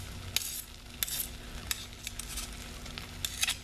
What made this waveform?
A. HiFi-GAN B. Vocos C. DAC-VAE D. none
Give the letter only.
D